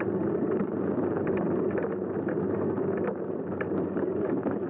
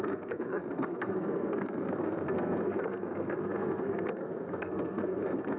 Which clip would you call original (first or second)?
first